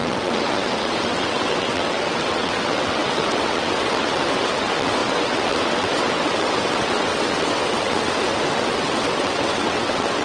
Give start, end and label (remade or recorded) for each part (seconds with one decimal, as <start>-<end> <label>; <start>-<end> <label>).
0.0-10.2 remade